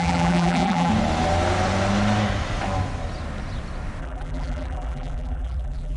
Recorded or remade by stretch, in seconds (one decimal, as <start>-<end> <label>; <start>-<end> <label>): 0.0-0.9 remade; 0.9-4.0 recorded; 4.0-6.0 remade

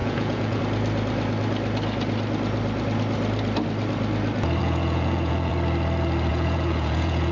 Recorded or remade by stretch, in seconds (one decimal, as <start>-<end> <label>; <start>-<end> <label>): 0.0-0.6 remade; 0.6-4.6 recorded; 4.6-5.5 remade; 5.5-6.3 recorded; 6.3-7.3 remade

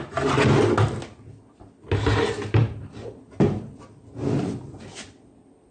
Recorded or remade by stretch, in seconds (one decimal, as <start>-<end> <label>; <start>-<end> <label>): 0.0-5.7 recorded

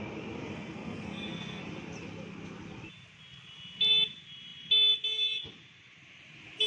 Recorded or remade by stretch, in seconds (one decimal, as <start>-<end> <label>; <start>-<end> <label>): 0.0-0.4 recorded; 0.4-1.6 remade; 1.6-6.7 recorded

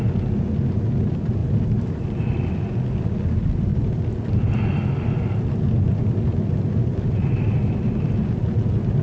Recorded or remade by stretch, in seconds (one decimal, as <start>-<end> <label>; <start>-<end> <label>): 0.0-9.0 recorded